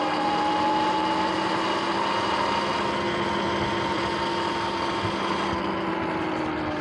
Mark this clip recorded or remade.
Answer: recorded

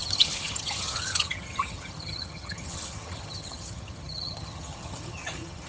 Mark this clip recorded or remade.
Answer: remade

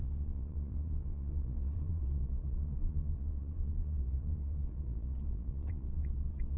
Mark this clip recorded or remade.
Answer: remade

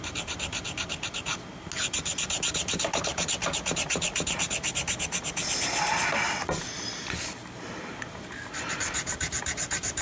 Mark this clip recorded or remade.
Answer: recorded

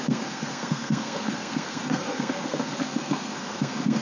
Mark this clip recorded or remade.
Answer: remade